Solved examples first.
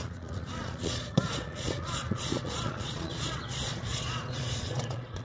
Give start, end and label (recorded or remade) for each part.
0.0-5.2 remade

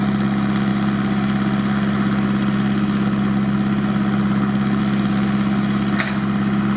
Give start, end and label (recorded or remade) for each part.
0.0-6.8 recorded

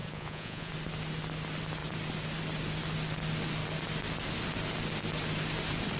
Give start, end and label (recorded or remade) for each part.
0.0-0.7 remade; 0.7-6.0 recorded

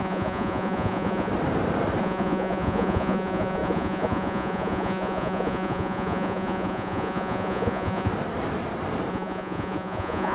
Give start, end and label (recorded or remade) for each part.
0.0-1.3 remade; 1.3-2.0 recorded; 2.0-8.1 remade; 8.1-9.1 recorded; 9.1-10.3 remade

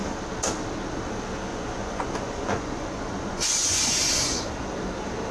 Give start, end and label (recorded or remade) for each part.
0.0-1.5 recorded; 1.5-4.5 remade; 4.5-5.3 recorded

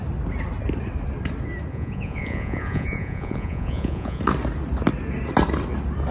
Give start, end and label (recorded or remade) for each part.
0.0-1.7 recorded; 1.7-4.2 remade; 4.2-6.1 recorded

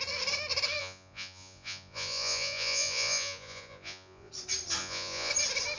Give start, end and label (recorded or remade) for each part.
0.0-0.8 recorded; 0.8-4.3 remade; 4.3-4.8 recorded; 4.8-5.3 remade; 5.3-5.8 recorded